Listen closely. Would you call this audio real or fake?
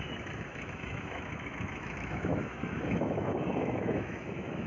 fake